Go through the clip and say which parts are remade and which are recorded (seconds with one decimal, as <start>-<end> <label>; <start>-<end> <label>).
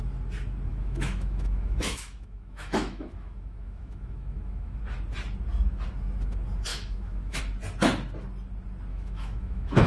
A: 0.0-0.7 recorded; 0.7-4.8 remade; 4.8-6.7 recorded; 6.7-7.4 remade; 7.4-8.9 recorded; 8.9-9.9 remade